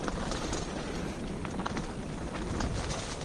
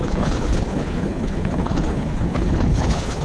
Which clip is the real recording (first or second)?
first